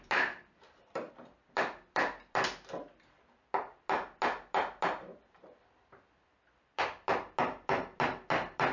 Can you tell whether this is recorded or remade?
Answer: recorded